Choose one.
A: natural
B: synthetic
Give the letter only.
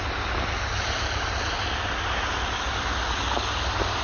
A